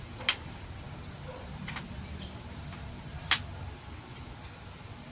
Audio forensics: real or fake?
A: real